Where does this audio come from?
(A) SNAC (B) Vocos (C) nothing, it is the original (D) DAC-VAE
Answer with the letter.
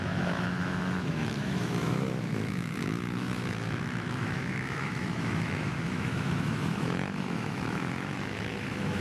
D